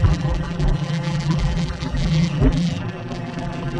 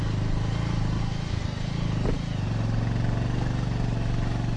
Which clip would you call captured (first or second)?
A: second